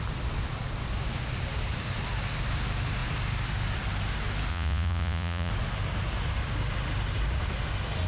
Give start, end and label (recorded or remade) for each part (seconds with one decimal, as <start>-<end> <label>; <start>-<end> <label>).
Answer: 0.0-4.5 recorded; 4.5-5.5 remade; 5.5-8.1 recorded